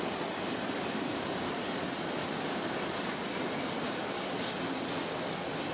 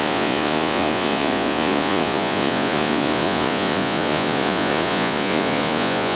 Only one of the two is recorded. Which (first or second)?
first